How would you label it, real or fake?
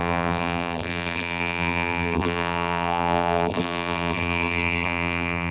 fake